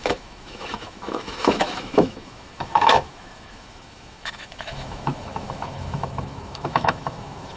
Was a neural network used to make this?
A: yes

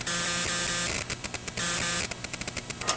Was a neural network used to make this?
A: no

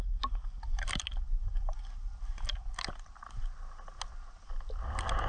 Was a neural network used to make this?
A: no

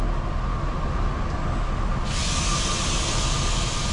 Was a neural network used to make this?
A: no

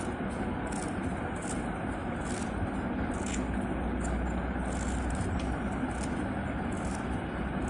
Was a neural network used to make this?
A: no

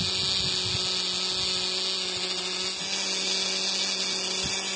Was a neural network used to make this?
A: no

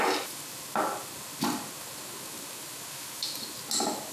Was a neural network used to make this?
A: no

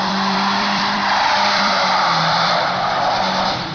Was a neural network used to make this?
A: yes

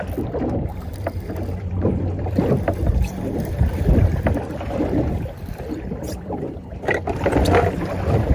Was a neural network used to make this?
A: yes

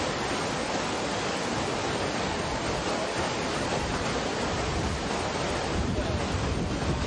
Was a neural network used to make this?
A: yes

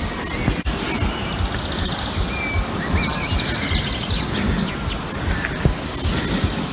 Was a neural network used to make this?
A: no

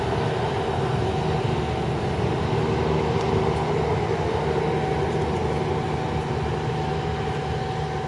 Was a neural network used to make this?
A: no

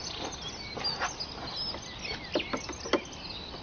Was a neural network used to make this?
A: no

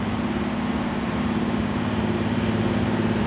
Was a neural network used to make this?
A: no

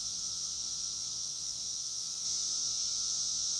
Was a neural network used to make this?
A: yes